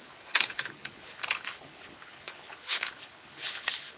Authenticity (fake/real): fake